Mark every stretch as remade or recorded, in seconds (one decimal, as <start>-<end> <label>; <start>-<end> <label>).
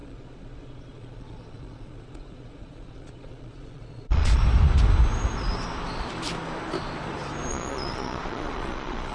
0.0-4.4 remade; 4.4-7.5 recorded; 7.5-9.1 remade